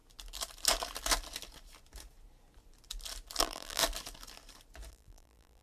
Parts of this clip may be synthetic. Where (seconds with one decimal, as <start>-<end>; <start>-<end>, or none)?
3.4-3.8; 4.9-5.6